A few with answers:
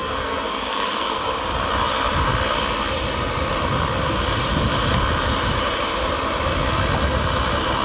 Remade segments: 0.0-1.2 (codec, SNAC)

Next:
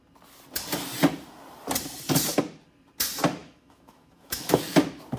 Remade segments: 3.4-4.6 (autoencoder, DAC-VAE)